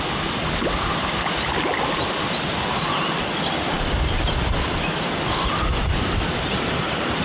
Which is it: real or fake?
real